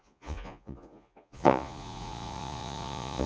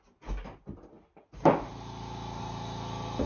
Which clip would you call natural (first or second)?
second